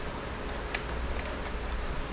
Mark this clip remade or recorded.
recorded